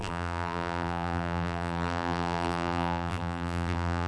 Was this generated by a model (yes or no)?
yes